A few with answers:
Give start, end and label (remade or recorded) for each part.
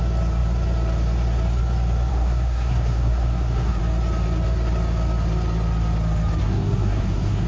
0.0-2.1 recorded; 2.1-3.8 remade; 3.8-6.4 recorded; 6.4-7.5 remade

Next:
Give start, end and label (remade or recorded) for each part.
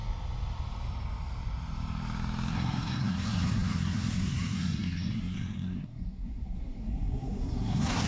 0.0-2.5 recorded; 2.5-8.1 remade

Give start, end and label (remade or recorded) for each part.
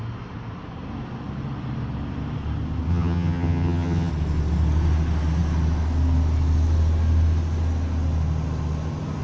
0.0-2.9 recorded; 2.9-4.1 remade; 4.1-9.2 recorded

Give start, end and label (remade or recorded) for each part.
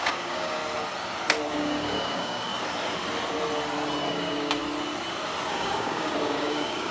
0.0-0.6 remade; 0.6-1.5 recorded; 1.5-2.5 remade; 2.5-4.1 recorded; 4.1-4.6 remade; 4.6-5.5 recorded; 5.5-6.9 remade